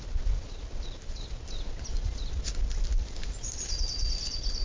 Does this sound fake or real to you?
real